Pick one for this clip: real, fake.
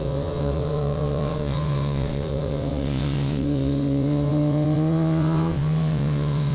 fake